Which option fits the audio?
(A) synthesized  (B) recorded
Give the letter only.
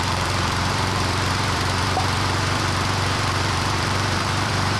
A